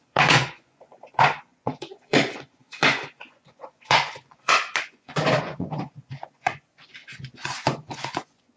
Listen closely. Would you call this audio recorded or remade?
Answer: remade